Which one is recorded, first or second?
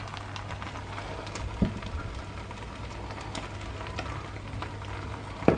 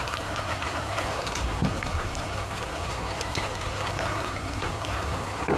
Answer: first